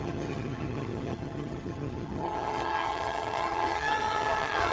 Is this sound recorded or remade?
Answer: remade